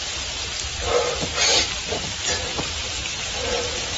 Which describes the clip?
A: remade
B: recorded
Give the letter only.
B